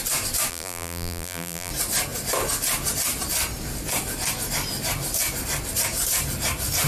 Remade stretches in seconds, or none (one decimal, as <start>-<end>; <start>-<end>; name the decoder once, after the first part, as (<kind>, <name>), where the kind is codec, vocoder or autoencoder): 0.5-1.7 (vocoder, BigVGAN v2)